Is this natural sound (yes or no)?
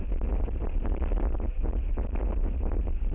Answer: yes